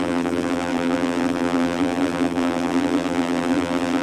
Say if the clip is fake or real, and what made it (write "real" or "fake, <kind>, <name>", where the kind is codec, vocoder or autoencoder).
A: fake, vocoder, BigVGAN v2